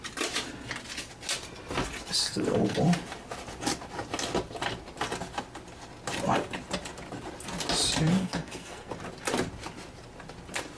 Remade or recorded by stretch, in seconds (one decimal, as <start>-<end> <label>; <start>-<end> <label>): 0.0-2.2 recorded; 2.2-2.8 remade; 2.8-8.2 recorded; 8.2-8.9 remade; 8.9-10.8 recorded